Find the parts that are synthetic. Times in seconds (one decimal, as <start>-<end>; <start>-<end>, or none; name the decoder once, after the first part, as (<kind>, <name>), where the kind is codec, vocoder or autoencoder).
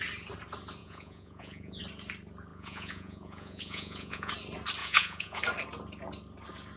0.8-1.8 (vocoder, Vocos); 2.5-4.3; 4.8-5.4